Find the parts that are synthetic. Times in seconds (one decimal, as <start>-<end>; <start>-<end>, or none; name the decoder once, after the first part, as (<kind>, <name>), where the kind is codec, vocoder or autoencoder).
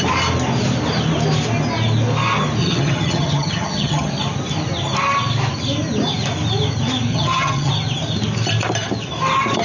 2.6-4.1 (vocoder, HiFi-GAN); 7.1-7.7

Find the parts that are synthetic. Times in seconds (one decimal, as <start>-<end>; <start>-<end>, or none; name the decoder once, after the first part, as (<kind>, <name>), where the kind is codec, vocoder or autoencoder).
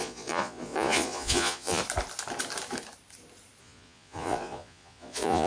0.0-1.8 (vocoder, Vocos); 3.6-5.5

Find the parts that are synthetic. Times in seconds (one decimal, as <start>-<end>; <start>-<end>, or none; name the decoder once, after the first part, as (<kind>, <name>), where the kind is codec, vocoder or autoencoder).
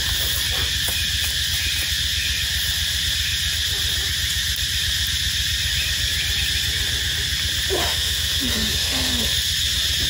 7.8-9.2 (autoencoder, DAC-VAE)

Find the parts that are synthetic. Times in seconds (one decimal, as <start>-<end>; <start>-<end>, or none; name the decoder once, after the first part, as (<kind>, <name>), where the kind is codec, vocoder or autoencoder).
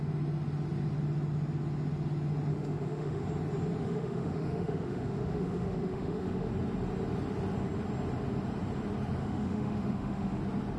2.5-3.2 (autoencoder, DAC-VAE); 3.8-6.5; 9.2-10.4